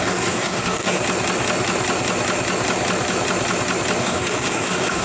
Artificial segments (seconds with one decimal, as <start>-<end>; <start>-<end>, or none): 0.0-1.0; 4.0-5.0